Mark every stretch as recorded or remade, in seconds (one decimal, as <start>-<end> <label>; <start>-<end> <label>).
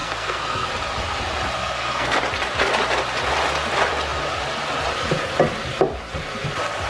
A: 0.0-0.7 remade; 0.7-1.6 recorded; 1.6-2.2 remade; 2.2-6.9 recorded